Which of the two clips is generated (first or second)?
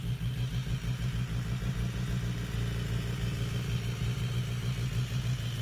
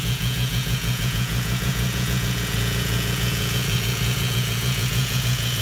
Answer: second